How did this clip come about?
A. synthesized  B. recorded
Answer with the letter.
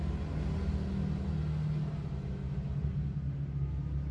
B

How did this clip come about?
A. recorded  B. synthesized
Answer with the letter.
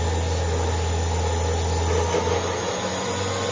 A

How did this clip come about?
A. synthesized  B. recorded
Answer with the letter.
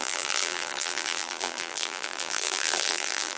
A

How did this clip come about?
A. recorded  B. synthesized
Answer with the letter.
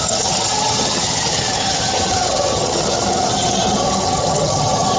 B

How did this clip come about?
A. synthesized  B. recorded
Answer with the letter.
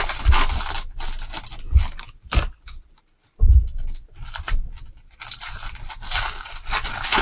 B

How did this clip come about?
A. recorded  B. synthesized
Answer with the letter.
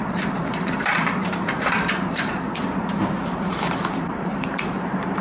B